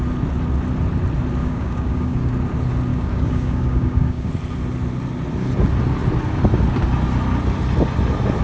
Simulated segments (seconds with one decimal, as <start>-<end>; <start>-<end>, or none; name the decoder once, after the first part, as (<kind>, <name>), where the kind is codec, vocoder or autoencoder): 1.4-2.3 (codec, DAC); 2.9-4.3

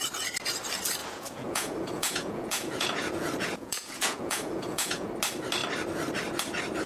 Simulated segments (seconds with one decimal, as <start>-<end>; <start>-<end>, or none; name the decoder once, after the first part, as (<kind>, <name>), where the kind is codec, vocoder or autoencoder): 1.0-5.1 (vocoder, Vocos)